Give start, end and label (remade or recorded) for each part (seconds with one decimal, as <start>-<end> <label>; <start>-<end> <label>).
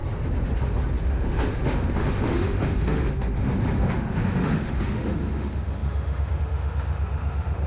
0.0-1.0 recorded; 1.0-7.7 remade